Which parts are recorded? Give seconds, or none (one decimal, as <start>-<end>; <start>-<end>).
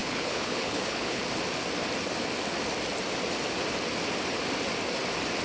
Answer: 1.2-5.4